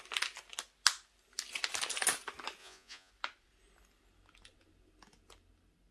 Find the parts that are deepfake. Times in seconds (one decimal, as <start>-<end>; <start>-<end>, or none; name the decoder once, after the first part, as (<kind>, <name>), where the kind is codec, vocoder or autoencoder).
2.6-3.1 (vocoder, Vocos)